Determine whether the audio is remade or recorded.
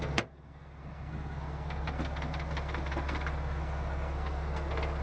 remade